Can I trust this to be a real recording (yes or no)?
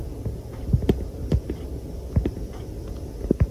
yes